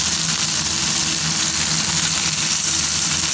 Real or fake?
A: real